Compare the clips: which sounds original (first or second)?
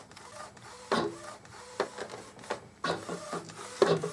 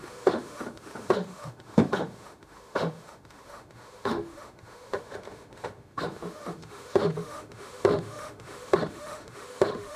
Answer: first